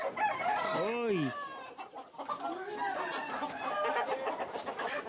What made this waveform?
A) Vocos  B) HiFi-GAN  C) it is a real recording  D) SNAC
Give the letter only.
C